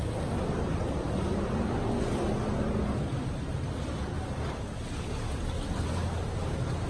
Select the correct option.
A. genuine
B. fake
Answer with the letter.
A